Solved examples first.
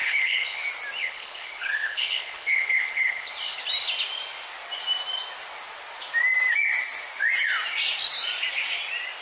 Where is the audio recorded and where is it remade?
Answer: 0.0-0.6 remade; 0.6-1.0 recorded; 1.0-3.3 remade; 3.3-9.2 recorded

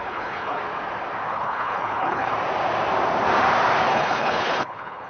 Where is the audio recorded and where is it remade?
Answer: 0.0-0.6 remade; 0.6-1.3 recorded; 1.3-2.3 remade; 2.3-3.9 recorded; 3.9-5.1 remade

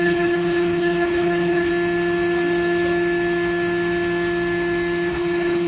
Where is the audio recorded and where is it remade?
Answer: 0.0-1.7 remade; 1.7-5.1 recorded; 5.1-5.7 remade

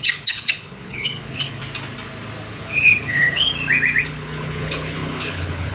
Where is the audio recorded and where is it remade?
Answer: 0.0-1.6 remade; 1.6-2.5 recorded; 2.5-3.5 remade; 3.5-4.0 recorded; 4.0-5.7 remade